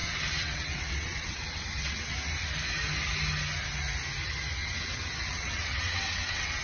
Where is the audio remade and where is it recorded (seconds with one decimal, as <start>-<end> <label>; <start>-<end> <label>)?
0.0-2.1 remade; 2.1-4.6 recorded; 4.6-6.6 remade